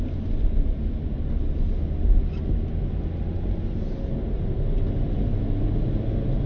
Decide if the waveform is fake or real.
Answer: real